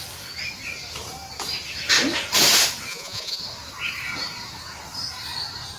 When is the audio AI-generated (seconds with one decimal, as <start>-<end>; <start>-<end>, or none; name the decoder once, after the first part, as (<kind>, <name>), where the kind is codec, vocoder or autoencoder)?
2.9-3.4 (vocoder, Vocos)